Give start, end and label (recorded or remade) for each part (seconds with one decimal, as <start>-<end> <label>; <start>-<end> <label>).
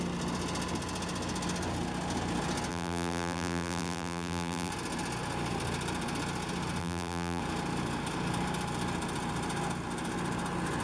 0.0-2.7 recorded; 2.7-4.7 remade; 4.7-6.8 recorded; 6.8-7.4 remade; 7.4-10.8 recorded